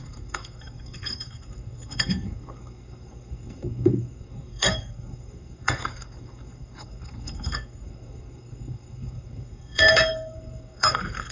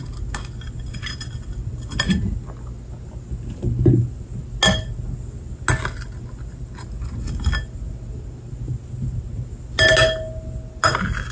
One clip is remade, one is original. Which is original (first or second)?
second